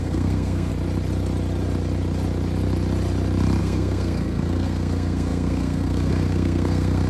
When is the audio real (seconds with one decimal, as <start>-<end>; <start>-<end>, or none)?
0.7-3.6